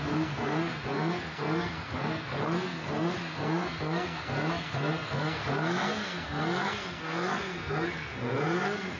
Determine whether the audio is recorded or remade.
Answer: remade